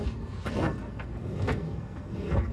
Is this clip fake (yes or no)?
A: yes